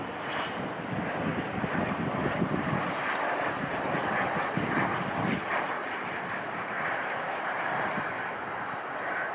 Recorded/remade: recorded